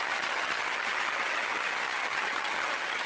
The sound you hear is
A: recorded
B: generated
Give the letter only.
B